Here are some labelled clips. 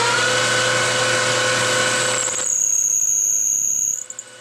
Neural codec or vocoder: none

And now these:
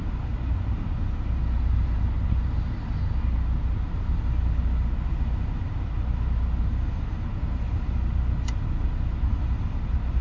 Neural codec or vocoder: none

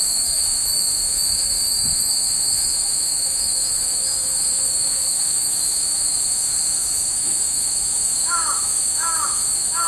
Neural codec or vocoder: autoencoder, DAC-VAE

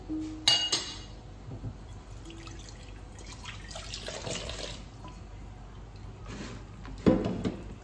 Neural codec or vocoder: none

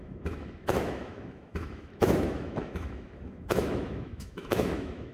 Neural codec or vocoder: autoencoder, DAC-VAE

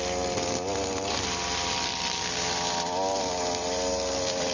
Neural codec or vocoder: none